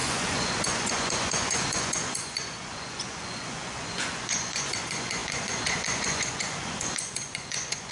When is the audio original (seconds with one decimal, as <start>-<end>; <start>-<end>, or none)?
none

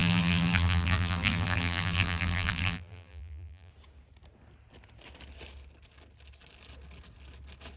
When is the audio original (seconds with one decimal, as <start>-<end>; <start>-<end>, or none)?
3.7-7.8